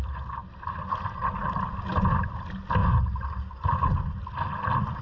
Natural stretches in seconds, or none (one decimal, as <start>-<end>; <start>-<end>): 0.0-5.0